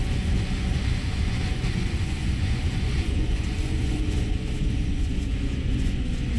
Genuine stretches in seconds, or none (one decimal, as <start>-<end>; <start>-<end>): none